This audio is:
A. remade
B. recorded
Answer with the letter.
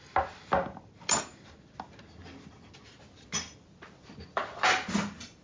B